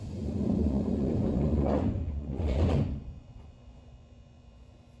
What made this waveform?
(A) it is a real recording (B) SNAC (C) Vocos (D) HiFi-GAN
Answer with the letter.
C